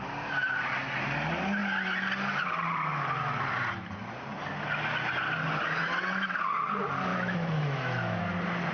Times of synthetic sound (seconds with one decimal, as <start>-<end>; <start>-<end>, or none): 7.1-8.2